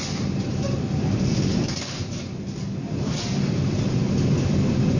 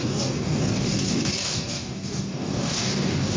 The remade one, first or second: second